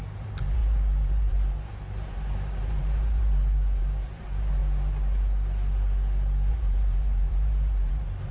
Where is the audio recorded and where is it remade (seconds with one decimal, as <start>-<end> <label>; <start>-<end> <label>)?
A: 0.0-4.6 remade; 4.6-6.5 recorded; 6.5-8.3 remade